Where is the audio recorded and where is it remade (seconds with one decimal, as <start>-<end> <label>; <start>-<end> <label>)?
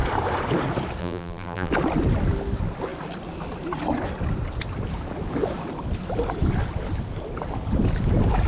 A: 0.0-1.0 recorded; 1.0-1.7 remade; 1.7-8.5 recorded